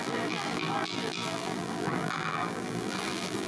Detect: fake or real fake